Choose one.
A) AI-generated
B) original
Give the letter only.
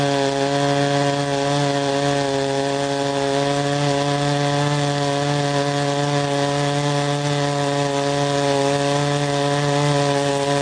B